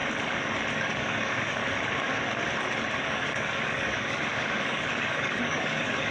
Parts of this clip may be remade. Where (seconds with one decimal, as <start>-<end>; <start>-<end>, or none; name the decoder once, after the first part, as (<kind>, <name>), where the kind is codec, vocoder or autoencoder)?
0.7-1.6 (codec, DAC); 3.0-6.1